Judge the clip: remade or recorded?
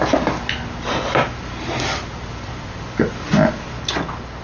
recorded